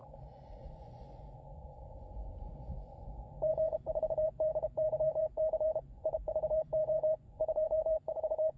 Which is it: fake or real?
fake